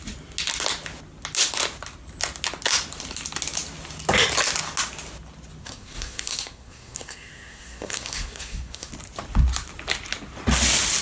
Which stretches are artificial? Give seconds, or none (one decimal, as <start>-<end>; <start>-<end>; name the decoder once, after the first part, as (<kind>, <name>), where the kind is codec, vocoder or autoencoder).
5.6-8.9 (codec, SNAC)